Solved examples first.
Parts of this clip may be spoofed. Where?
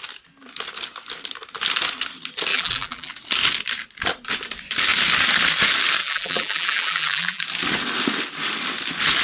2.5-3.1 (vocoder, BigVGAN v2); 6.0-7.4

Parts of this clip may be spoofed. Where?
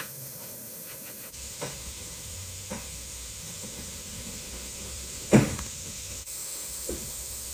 0.0-7.5 (autoencoder, DAC-VAE)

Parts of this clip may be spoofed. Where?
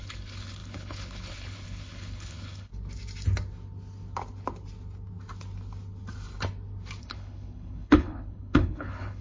0.0-2.7 (codec, HILCodec); 7.0-9.2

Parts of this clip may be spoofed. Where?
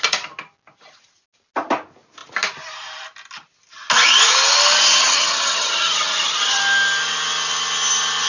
5.0-6.6 (vocoder, HiFi-GAN)